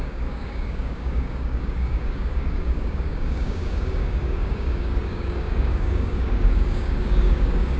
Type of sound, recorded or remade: remade